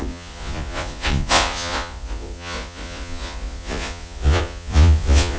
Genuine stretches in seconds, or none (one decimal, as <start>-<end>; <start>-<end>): none